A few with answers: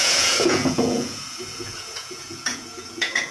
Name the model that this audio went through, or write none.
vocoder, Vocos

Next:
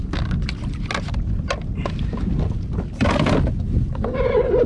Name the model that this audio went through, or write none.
none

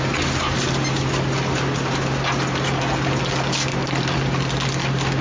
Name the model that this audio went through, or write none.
none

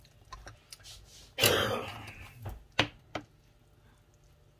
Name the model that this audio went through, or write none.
none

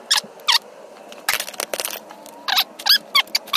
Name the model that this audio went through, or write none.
none